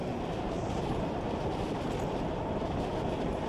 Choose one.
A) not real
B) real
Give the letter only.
B